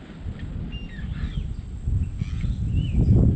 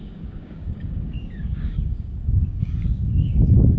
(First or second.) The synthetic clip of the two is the second